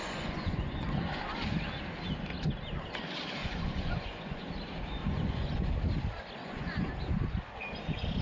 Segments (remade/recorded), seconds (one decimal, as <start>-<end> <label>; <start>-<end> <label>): 0.0-1.2 remade; 1.2-3.4 recorded; 3.4-4.5 remade; 4.5-5.0 recorded; 5.0-5.7 remade; 5.7-6.4 recorded; 6.4-6.9 remade; 6.9-8.2 recorded